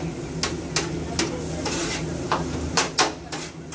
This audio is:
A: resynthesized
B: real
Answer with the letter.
B